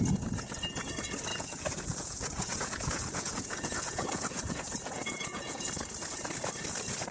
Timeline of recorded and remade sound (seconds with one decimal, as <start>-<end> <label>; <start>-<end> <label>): 0.0-1.3 recorded; 1.3-5.6 remade; 5.6-7.1 recorded

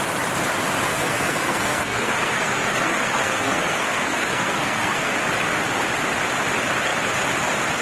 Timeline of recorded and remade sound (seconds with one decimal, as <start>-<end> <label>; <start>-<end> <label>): 0.0-0.9 recorded; 0.9-5.1 remade; 5.1-7.8 recorded

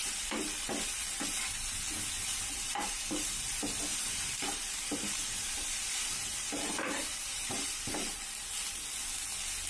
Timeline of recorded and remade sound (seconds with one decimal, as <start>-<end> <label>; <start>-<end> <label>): 0.0-3.9 recorded; 3.9-7.8 remade; 7.8-9.7 recorded

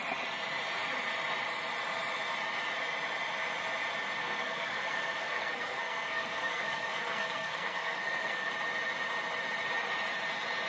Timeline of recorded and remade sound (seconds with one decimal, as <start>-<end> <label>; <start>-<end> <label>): 0.0-4.2 recorded; 4.2-8.5 remade; 8.5-10.7 recorded

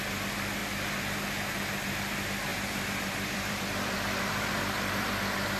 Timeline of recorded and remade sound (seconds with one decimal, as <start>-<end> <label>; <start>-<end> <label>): 0.0-2.5 recorded; 2.5-5.1 remade; 5.1-5.6 recorded

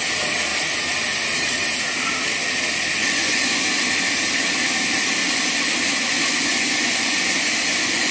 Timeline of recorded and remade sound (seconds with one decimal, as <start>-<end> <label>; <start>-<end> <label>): 0.0-3.0 recorded; 3.0-3.6 remade; 3.6-5.2 recorded; 5.2-8.1 remade

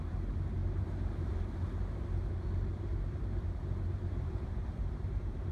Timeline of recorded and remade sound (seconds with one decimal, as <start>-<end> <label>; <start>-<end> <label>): 0.0-0.6 recorded; 0.6-2.0 remade; 2.0-2.7 recorded; 2.7-5.5 remade

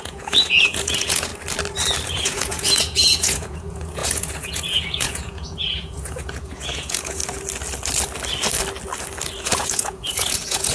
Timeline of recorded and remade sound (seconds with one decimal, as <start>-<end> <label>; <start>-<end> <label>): 0.0-1.3 remade; 1.3-2.1 recorded; 2.1-7.2 remade; 7.2-9.4 recorded; 9.4-10.7 remade